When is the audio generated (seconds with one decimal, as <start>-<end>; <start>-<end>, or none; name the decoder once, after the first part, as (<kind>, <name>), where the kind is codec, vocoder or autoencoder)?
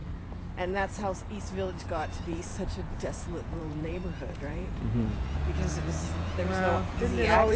1.8-7.6 (vocoder, Vocos)